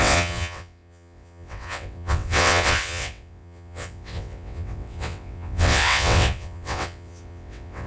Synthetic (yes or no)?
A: yes